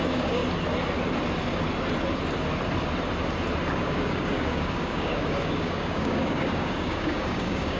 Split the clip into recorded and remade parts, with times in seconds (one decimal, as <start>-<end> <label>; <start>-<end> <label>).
0.0-0.4 remade; 0.4-3.7 recorded; 3.7-7.8 remade